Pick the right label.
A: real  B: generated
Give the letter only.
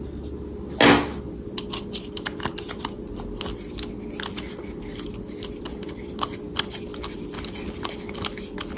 A